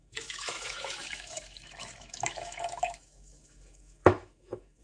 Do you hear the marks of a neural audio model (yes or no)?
yes